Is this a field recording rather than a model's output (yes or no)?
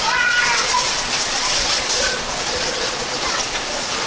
no